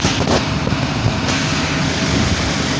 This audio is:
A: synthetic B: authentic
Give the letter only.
B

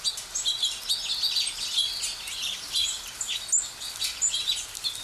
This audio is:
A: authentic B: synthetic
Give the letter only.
A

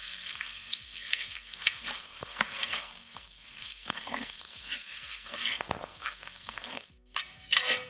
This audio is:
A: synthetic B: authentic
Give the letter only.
A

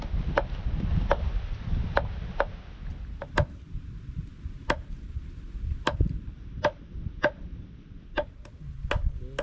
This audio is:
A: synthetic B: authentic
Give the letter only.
B